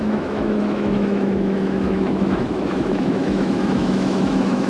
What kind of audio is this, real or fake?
fake